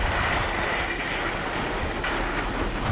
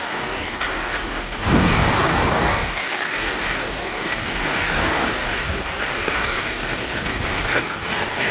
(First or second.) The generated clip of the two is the second